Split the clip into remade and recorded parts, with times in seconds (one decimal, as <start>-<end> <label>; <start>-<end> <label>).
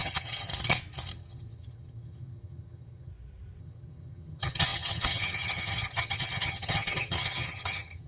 0.0-0.5 remade; 0.5-1.1 recorded; 1.1-3.1 remade; 3.1-3.6 recorded; 3.6-8.1 remade